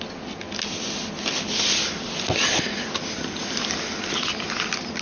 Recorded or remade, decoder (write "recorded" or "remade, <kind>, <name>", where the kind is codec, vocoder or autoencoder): recorded